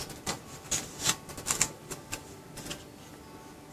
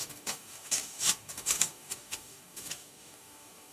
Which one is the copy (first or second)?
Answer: second